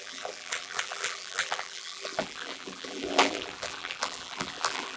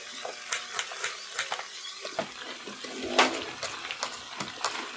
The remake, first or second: first